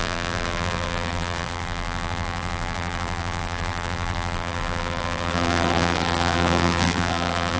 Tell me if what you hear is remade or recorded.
remade